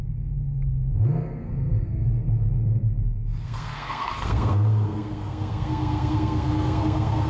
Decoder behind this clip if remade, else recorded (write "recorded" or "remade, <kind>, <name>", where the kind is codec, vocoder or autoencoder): remade, codec, SNAC